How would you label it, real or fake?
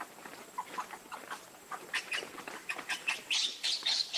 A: real